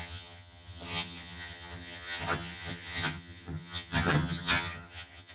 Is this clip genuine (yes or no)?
no